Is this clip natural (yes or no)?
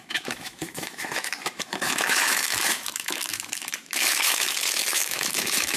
no